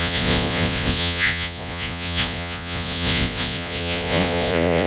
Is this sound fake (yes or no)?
yes